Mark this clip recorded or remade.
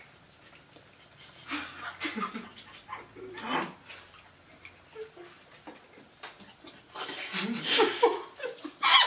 recorded